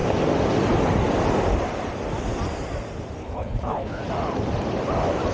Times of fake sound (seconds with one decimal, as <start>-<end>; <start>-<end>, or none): 3.2-4.0